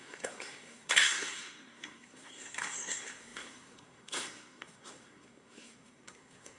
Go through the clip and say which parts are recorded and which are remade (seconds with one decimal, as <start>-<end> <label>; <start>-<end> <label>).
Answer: 0.0-6.6 remade